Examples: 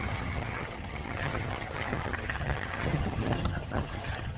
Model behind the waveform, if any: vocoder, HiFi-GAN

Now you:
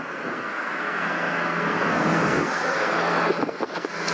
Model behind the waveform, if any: codec, SNAC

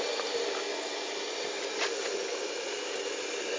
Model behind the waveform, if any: none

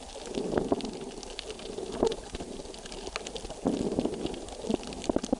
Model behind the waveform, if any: none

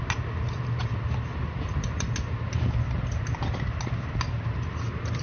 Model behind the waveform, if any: none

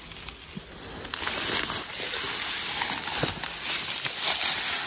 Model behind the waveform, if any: none